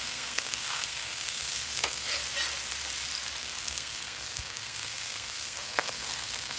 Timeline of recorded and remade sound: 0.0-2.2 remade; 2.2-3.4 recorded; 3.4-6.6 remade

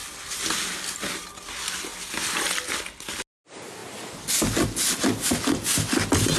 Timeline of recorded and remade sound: 0.0-6.4 recorded

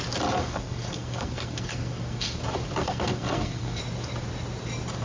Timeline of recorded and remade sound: 0.0-0.4 recorded; 0.4-2.4 remade; 2.4-2.8 recorded; 2.8-3.8 remade; 3.8-5.0 recorded

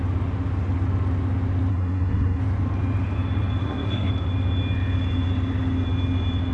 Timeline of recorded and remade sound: 0.0-1.7 recorded; 1.7-2.4 remade; 2.4-3.6 recorded; 3.6-4.1 remade; 4.1-6.5 recorded